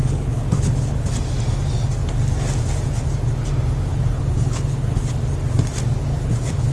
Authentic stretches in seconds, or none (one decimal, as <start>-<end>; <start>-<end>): 1.1-3.9; 5.2-6.1